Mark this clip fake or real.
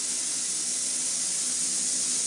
real